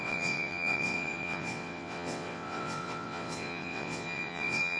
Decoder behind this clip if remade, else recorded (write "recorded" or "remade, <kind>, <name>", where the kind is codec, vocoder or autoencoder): remade, vocoder, WaveNeXt